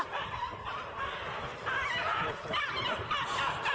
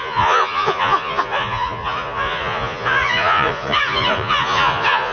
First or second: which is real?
first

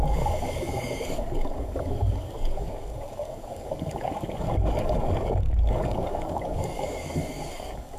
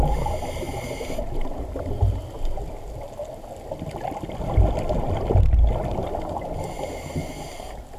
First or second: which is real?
second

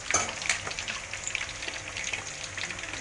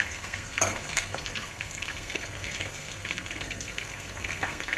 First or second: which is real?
first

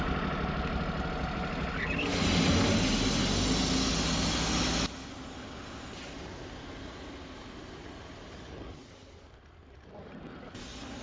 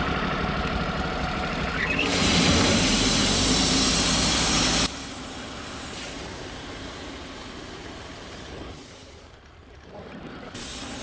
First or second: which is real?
first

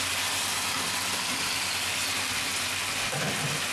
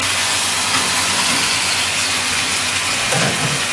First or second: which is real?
first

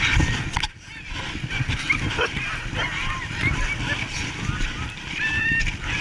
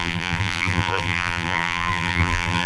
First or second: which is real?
first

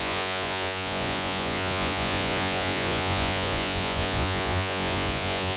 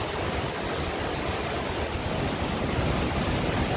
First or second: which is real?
second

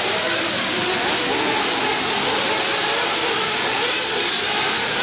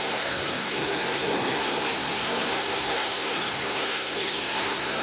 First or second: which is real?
first